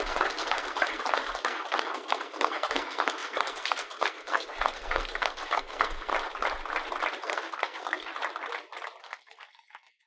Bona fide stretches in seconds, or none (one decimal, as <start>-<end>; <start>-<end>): 6.1-7.2; 8.1-9.0